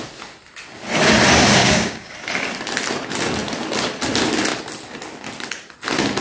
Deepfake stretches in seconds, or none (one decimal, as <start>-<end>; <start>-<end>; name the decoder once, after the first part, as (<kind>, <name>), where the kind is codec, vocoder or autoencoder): 1.6-2.1 (codec, DAC)